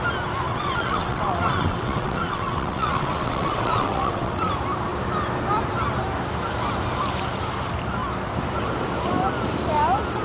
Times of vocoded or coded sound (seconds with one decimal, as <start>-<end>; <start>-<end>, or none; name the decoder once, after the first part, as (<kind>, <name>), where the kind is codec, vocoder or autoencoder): 0.5-4.5 (vocoder, WaveNeXt)